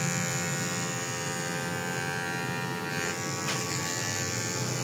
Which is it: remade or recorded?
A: recorded